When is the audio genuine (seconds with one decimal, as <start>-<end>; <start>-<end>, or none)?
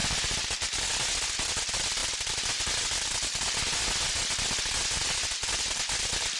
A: 0.0-6.4